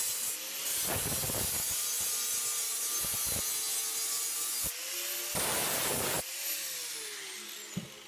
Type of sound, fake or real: real